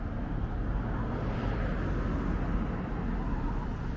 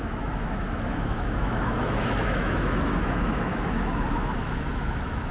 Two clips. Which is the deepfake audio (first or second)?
second